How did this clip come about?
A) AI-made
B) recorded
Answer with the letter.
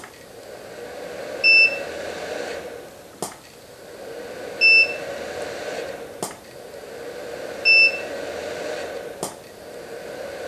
B